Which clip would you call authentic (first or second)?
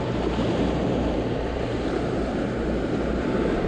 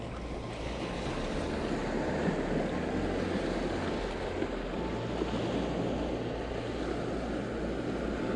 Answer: second